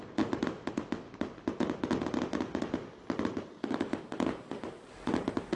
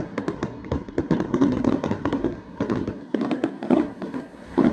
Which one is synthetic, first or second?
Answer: second